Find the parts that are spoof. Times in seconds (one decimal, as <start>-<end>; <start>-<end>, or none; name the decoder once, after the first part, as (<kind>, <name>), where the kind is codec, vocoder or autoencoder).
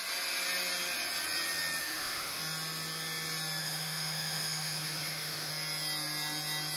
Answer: 1.8-2.4 (autoencoder, DAC-VAE); 3.6-5.5